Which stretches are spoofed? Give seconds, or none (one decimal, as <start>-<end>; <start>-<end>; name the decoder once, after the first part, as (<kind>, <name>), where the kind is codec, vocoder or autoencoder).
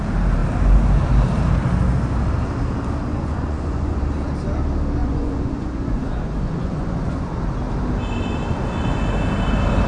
3.1-4.0 (vocoder, Vocos); 5.0-7.3